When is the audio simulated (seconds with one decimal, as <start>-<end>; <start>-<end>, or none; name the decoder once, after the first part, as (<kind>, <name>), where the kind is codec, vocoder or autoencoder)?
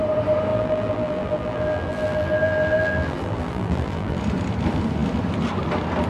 0.5-4.2 (vocoder, BigVGAN v2)